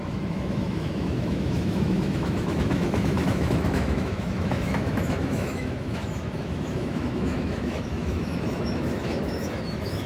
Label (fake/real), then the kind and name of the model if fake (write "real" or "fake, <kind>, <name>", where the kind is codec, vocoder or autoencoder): fake, autoencoder, DAC-VAE